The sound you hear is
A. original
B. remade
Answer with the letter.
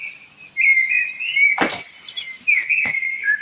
A